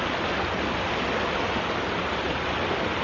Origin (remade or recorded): recorded